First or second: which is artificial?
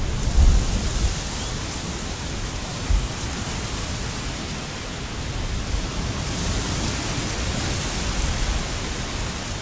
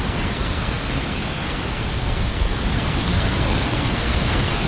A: second